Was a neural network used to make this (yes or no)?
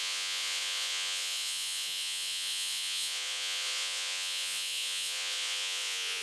yes